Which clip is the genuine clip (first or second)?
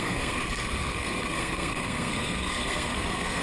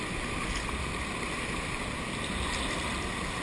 second